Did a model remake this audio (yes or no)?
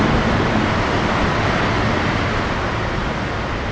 no